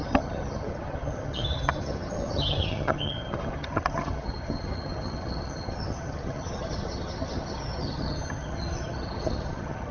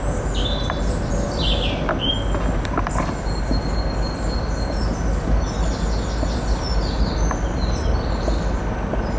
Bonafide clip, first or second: second